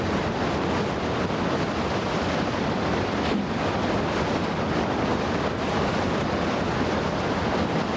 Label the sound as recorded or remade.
recorded